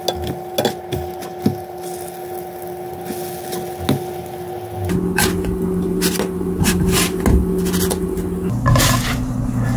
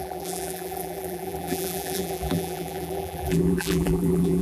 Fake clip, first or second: second